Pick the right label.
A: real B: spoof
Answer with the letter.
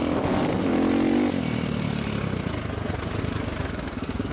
A